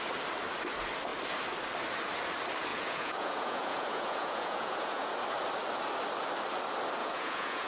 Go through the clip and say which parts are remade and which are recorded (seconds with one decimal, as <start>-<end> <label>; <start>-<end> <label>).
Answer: 0.0-2.7 recorded; 2.7-5.1 remade; 5.1-7.0 recorded; 7.0-7.7 remade